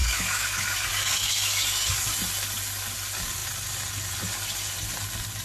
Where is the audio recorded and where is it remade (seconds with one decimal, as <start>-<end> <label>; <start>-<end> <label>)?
0.0-2.0 remade; 2.0-5.4 recorded

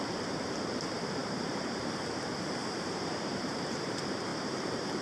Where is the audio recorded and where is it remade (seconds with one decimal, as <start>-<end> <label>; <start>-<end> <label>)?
0.0-5.0 remade